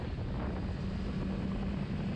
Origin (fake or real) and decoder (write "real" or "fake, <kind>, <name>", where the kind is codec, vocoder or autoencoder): real